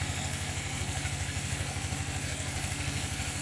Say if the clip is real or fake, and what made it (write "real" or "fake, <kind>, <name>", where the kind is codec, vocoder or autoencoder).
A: fake, codec, SNAC